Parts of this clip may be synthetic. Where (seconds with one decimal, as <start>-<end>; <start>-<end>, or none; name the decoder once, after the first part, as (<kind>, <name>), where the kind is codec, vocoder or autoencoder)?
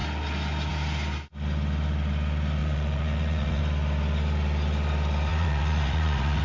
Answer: 2.6-3.6 (vocoder, Vocos); 5.3-6.4